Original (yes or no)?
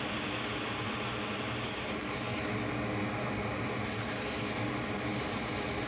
yes